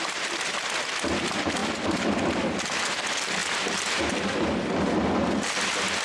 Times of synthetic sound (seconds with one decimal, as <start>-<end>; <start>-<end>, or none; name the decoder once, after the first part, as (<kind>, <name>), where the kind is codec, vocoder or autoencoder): 1.6-2.8 (vocoder, BigVGAN v2); 3.4-4.0